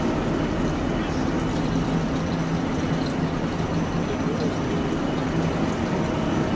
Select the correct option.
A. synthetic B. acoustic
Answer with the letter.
B